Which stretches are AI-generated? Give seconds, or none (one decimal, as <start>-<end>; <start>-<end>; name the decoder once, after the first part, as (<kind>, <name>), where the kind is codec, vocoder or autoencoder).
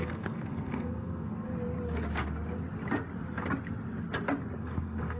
0.0-1.5 (codec, SNAC); 4.6-5.2